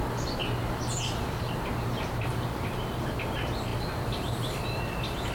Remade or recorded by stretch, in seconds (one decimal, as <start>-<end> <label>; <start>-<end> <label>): 0.0-5.3 recorded